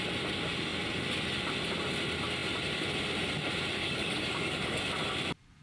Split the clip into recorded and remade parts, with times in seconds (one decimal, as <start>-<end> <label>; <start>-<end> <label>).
0.0-3.8 recorded; 3.8-4.8 remade; 4.8-5.6 recorded